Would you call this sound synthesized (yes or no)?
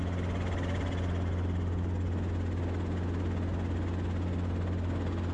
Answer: no